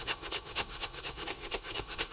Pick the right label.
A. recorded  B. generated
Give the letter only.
B